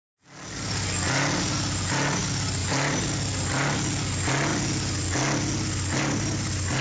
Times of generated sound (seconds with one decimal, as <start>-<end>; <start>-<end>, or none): none